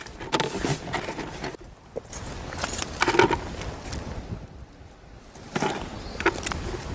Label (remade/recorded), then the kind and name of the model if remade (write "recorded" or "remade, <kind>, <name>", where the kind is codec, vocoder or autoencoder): recorded